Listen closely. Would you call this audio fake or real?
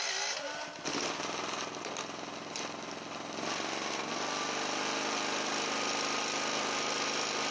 real